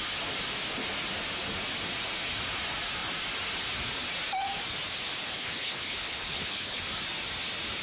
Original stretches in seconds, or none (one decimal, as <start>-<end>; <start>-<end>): 0.0-5.3; 6.8-7.8